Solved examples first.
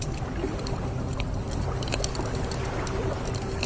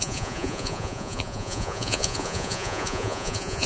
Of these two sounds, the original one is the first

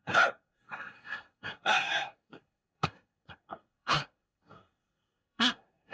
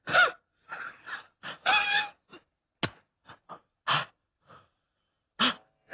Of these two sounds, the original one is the second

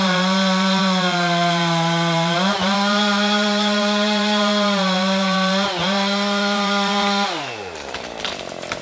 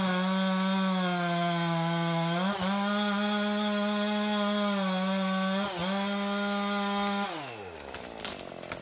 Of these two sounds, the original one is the second